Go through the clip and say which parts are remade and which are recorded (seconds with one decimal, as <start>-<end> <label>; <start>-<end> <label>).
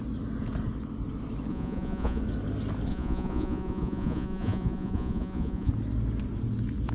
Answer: 0.0-1.5 recorded; 1.5-2.2 remade; 2.2-2.9 recorded; 2.9-5.7 remade; 5.7-6.9 recorded